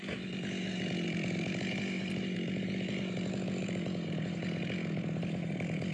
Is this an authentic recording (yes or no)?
yes